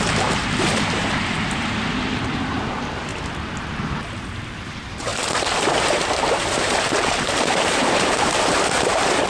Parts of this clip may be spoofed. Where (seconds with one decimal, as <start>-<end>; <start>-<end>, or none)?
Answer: 0.0-5.1; 5.6-9.3